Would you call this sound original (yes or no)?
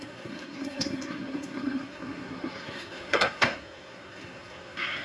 no